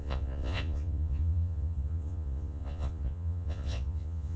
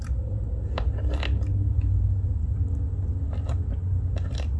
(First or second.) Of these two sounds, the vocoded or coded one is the first